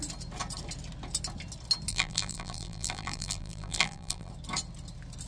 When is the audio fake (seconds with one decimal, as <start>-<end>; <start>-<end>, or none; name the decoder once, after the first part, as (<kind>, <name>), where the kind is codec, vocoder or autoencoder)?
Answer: 1.9-4.3 (vocoder, BigVGAN v2)